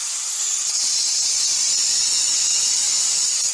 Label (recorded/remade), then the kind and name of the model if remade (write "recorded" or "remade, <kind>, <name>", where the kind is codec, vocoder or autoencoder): recorded